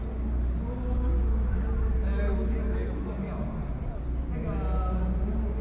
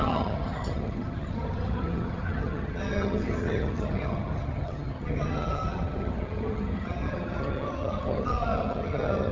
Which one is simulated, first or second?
second